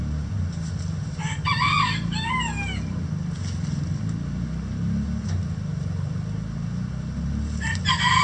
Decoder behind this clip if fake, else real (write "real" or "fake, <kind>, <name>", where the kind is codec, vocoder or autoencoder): real